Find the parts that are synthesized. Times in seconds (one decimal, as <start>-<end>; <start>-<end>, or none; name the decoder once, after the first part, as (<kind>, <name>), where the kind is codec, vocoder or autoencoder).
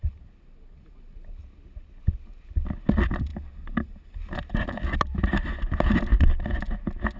none